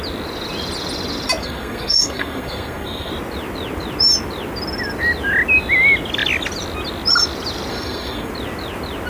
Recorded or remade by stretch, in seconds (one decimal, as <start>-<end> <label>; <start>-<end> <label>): 0.0-1.4 recorded; 1.4-3.1 remade; 3.1-7.7 recorded; 7.7-8.3 remade; 8.3-9.1 recorded